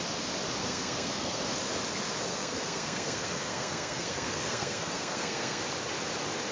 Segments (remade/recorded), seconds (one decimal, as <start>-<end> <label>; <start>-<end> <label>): 0.0-0.6 recorded; 0.6-1.4 remade; 1.4-2.3 recorded; 2.3-5.6 remade; 5.6-6.5 recorded